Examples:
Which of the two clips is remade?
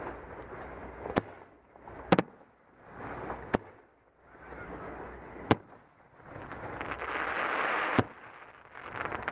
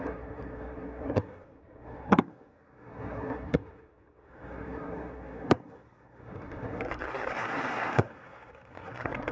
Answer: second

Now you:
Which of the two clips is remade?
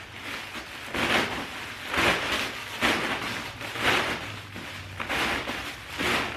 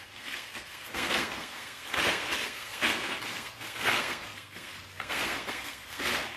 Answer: second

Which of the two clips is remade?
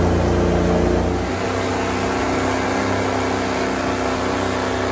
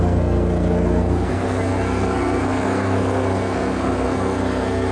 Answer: second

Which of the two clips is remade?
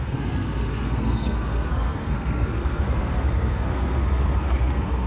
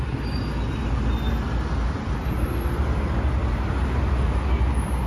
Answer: first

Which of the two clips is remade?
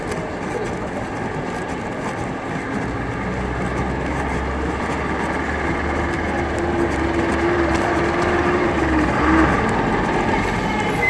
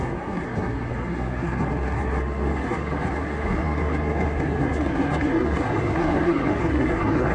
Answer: second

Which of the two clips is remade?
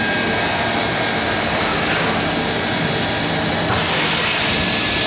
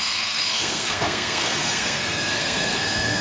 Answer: second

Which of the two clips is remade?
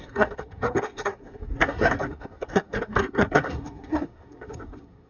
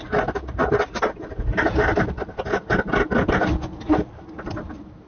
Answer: first